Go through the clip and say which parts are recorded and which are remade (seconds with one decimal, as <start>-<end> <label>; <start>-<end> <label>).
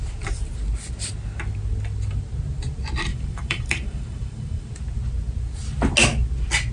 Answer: 0.0-3.1 recorded; 3.1-4.7 remade; 4.7-6.7 recorded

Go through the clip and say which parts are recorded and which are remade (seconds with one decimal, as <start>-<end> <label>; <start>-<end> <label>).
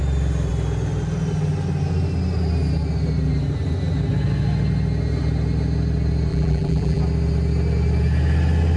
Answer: 0.0-6.3 recorded; 6.3-7.0 remade; 7.0-8.8 recorded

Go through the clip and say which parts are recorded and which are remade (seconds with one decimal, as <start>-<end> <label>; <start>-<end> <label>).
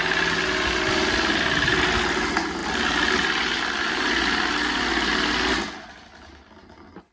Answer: 0.0-7.1 recorded